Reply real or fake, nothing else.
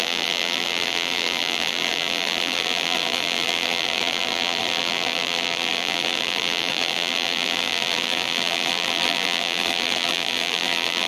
fake